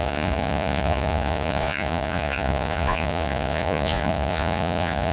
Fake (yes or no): yes